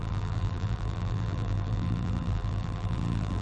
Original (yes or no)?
no